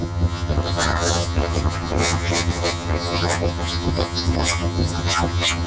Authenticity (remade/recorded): remade